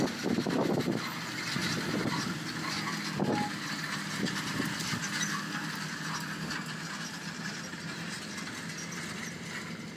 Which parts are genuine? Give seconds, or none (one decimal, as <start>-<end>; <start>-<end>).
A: 0.0-10.0